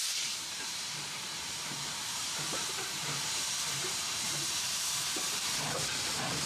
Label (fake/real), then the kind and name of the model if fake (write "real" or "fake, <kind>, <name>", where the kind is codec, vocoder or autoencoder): fake, vocoder, BigVGAN v2